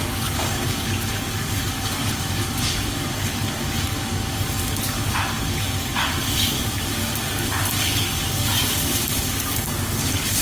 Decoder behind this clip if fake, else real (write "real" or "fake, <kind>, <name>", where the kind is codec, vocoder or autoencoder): fake, codec, DAC